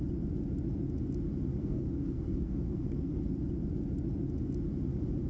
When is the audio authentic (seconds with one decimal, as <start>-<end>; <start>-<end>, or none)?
0.0-1.6; 3.2-5.3